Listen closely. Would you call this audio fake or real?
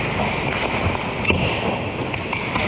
real